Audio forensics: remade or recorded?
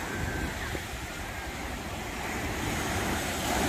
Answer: recorded